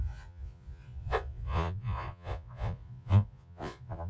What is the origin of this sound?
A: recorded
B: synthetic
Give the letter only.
B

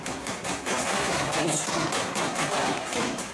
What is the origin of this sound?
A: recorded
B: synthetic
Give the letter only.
B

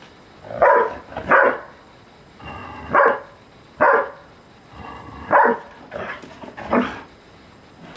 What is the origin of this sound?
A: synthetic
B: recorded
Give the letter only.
B